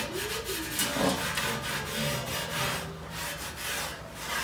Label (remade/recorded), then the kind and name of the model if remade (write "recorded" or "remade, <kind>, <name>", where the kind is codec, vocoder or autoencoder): recorded